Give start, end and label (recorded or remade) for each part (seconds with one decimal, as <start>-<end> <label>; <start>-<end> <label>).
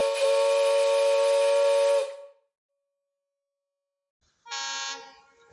0.0-2.7 recorded; 2.7-4.1 remade; 4.1-5.5 recorded